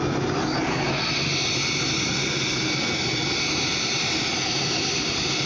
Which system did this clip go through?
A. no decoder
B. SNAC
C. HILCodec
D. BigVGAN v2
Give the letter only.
A